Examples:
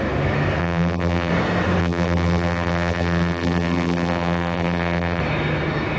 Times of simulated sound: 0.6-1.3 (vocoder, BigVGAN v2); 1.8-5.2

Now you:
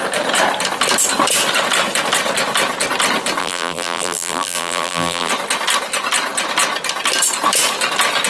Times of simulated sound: 3.4-5.3 (vocoder, BigVGAN v2)